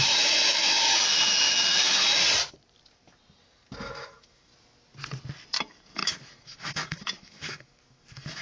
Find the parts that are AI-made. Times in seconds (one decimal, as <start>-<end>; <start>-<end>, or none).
0.0-2.2; 3.8-4.5; 5.6-8.4